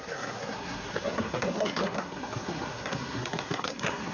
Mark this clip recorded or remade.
remade